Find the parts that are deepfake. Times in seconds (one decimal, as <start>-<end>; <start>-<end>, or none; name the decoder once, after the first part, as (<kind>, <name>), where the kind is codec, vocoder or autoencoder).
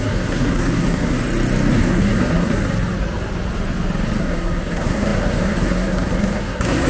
0.0-1.2 (codec, SNAC); 1.7-2.6; 4.2-6.9